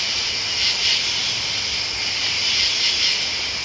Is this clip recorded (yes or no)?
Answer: yes